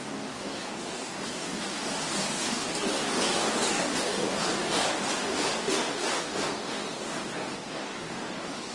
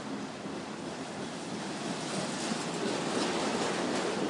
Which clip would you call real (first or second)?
second